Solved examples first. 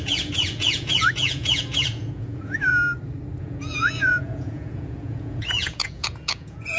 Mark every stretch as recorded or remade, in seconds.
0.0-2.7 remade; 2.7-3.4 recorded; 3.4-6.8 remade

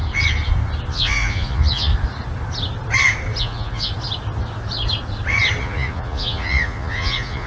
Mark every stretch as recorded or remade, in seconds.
0.0-0.9 recorded; 0.9-1.9 remade; 1.9-3.4 recorded; 3.4-3.9 remade; 3.9-5.6 recorded; 5.6-7.5 remade

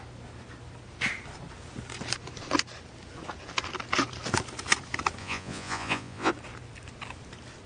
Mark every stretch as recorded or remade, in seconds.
0.0-5.2 recorded; 5.2-6.3 remade; 6.3-7.7 recorded

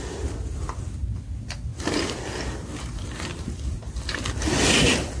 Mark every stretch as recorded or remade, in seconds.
0.0-5.2 recorded

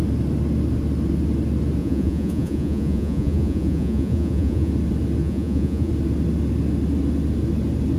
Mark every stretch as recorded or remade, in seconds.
0.0-1.8 recorded; 1.8-4.7 remade; 4.7-5.2 recorded; 5.2-5.9 remade; 5.9-8.0 recorded

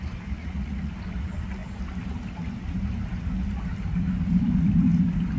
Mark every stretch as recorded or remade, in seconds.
0.0-0.4 recorded; 0.4-0.9 remade; 0.9-5.4 recorded